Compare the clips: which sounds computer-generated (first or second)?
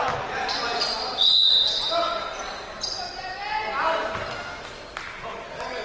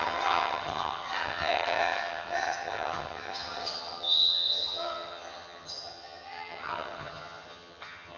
second